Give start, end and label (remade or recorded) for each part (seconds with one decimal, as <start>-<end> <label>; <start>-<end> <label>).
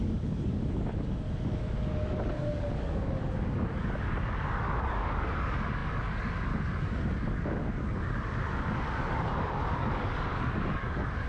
0.0-11.3 remade